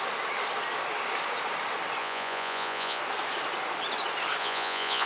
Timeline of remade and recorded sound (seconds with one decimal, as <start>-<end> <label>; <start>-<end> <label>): 0.0-2.0 recorded; 2.0-3.0 remade; 3.0-4.4 recorded; 4.4-5.1 remade